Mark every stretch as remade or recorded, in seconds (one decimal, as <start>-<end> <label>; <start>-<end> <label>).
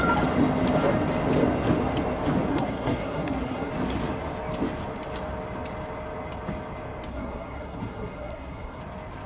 0.0-2.5 recorded; 2.5-3.7 remade; 3.7-7.1 recorded; 7.1-8.8 remade; 8.8-9.3 recorded